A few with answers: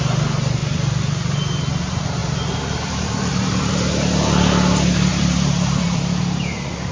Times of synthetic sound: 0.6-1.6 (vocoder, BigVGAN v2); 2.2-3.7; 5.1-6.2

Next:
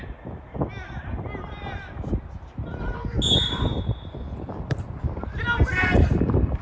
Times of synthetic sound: 3.4-4.9 (vocoder, BigVGAN v2)

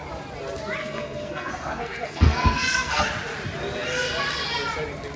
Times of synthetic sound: 0.8-3.0 (codec, SNAC)

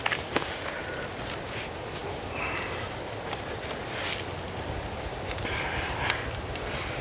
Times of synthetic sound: none

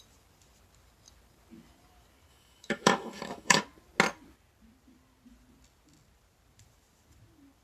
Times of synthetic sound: 2.3-3.6 (autoencoder, DAC-VAE)

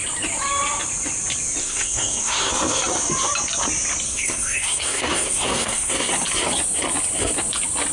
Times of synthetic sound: 1.6-2.5 (codec, SNAC); 4.1-6.1

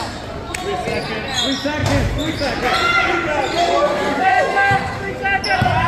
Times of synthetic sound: 3.6-5.1 (codec, SNAC)

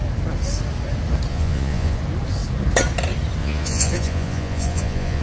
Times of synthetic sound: 1.3-2.0 (vocoder, Vocos); 3.4-5.2